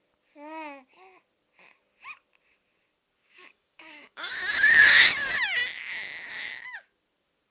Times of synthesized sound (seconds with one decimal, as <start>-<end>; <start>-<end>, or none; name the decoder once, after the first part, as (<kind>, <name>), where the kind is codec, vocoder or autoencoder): 3.2-4.3 (codec, DAC)